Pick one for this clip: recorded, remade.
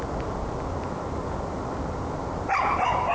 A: recorded